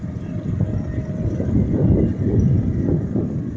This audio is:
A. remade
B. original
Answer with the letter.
B